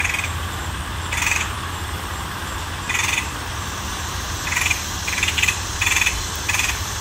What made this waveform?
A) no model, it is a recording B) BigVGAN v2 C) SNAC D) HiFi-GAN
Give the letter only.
B